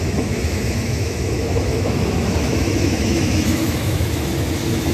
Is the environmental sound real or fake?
fake